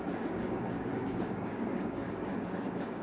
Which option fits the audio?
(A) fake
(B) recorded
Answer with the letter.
A